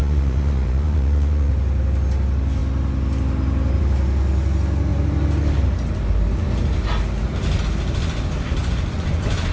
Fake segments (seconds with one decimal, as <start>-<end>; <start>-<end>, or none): 0.0-1.5; 8.6-9.1